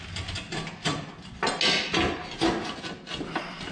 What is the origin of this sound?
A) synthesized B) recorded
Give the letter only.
B